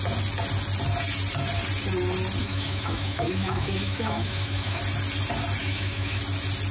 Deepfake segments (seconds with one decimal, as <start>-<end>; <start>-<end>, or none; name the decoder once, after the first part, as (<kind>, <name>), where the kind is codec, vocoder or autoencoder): 2.4-4.8 (autoencoder, DAC-VAE); 5.6-6.2